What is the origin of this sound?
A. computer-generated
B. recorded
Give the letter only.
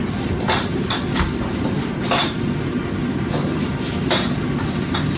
B